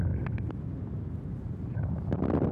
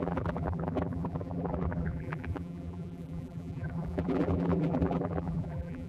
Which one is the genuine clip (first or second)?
first